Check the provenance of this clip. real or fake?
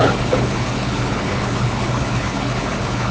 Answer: fake